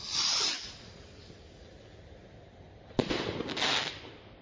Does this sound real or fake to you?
real